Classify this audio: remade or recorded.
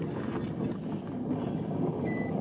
recorded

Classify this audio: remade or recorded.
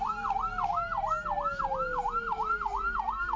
recorded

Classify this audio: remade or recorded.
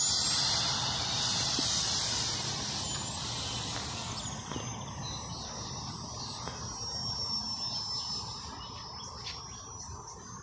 recorded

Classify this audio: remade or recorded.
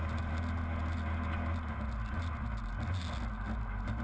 recorded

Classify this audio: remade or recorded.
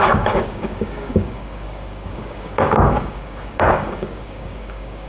remade